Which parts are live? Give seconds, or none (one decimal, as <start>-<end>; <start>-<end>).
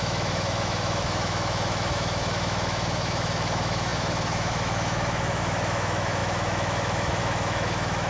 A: none